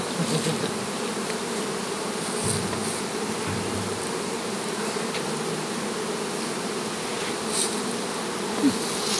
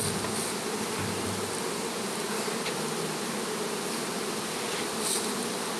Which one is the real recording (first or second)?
first